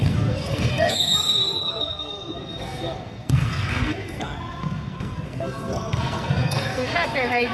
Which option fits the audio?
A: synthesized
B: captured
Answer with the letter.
A